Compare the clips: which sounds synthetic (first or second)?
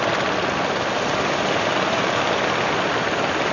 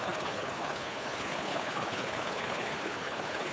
second